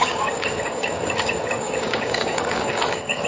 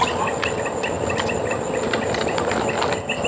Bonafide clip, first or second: second